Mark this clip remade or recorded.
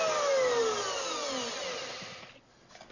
recorded